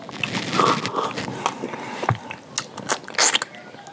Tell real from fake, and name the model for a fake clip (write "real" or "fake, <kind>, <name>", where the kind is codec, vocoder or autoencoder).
real